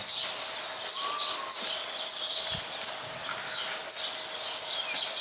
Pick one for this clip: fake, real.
real